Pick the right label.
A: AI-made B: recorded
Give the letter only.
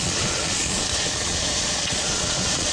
A